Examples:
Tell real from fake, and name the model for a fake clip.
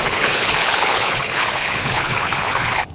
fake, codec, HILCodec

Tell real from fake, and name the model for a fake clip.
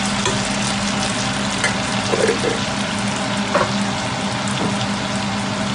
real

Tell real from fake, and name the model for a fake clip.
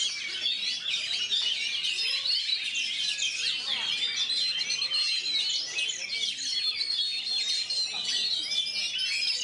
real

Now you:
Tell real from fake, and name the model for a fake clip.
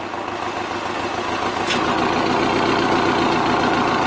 real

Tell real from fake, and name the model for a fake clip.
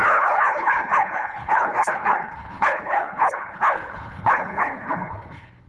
fake, codec, HILCodec